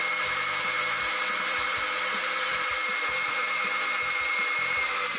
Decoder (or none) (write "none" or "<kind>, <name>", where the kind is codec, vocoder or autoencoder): vocoder, BigVGAN v2